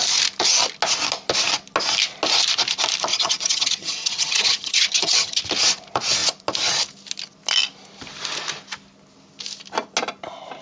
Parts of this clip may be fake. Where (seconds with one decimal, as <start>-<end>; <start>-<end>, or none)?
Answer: 3.1-5.4

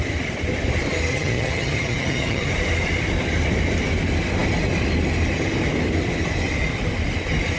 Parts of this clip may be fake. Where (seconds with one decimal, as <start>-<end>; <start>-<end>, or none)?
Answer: 1.1-2.5

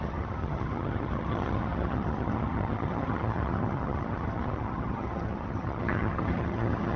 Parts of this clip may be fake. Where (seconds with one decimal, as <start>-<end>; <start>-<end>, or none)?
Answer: 0.0-7.0